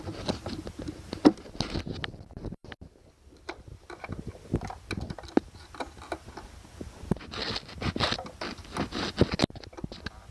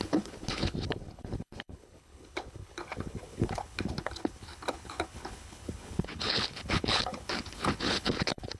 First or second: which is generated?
second